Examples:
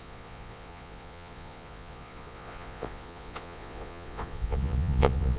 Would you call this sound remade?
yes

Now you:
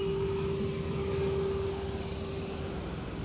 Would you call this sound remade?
no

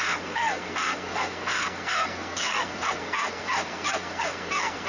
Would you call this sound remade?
yes